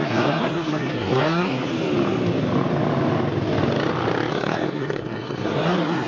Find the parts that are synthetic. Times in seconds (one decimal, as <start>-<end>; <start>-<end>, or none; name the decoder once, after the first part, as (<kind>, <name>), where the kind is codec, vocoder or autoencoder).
0.0-1.7 (codec, SNAC); 4.3-6.1